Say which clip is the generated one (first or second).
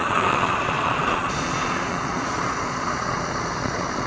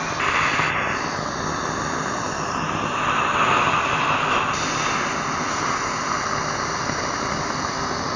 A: first